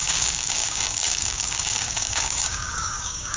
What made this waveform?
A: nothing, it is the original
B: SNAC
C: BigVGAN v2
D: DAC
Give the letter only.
D